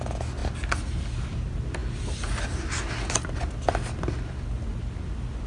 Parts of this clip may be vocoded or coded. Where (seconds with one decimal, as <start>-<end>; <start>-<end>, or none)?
none